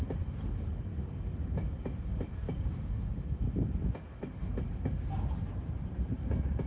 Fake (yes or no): no